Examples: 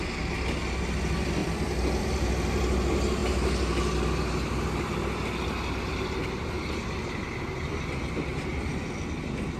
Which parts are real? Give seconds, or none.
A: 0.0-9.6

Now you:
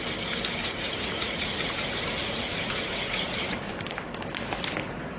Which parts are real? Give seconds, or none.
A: 0.0-0.6; 3.7-5.2

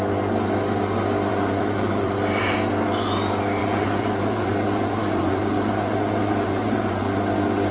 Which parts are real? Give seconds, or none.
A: 0.0-1.3; 2.2-3.6; 7.2-7.7

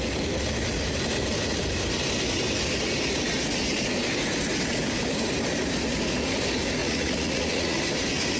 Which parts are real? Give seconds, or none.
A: 0.0-6.8; 7.8-8.4

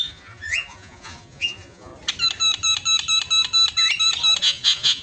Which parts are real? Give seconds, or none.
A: 1.9-4.4

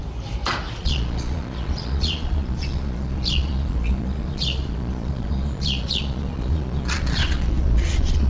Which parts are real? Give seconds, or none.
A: 0.0-0.8

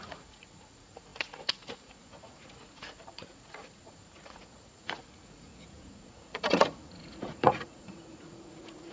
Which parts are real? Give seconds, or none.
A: none